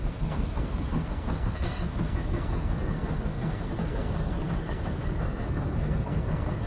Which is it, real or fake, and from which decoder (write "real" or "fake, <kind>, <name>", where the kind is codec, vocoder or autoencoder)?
fake, codec, SNAC